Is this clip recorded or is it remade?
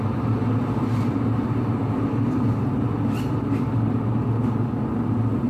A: recorded